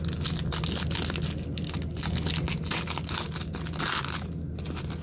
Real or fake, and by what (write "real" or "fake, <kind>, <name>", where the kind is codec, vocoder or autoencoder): real